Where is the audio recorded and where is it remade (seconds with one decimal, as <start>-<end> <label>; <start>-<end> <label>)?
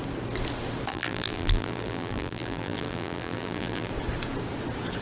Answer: 0.0-0.9 recorded; 0.9-3.9 remade; 3.9-5.0 recorded